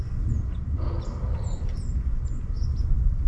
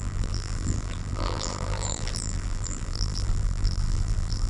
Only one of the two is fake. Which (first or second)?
second